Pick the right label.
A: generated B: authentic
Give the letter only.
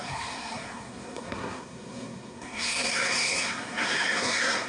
A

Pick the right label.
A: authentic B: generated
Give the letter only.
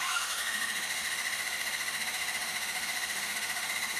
B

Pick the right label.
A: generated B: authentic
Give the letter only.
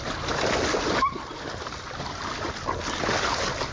B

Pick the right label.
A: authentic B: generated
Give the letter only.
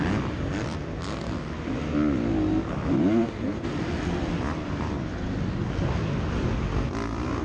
A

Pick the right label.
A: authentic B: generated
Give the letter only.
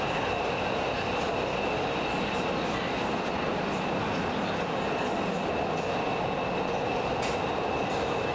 A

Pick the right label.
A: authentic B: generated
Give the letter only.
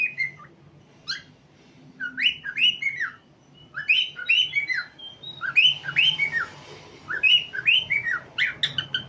A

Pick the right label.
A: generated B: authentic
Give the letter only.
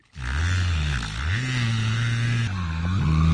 B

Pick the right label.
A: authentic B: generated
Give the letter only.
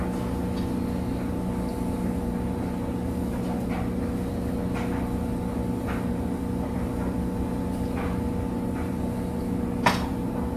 A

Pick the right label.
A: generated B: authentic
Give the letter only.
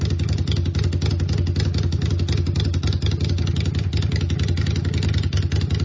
B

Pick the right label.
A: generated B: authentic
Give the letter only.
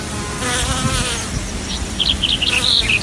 B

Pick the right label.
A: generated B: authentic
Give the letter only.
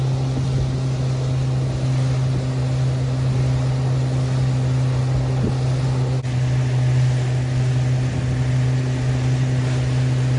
B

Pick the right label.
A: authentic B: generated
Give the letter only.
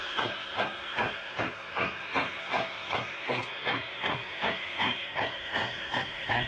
B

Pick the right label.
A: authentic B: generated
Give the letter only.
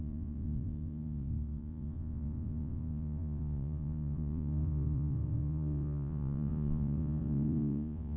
B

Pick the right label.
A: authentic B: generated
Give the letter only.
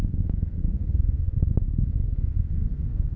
B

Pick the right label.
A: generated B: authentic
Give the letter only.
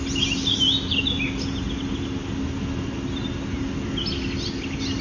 B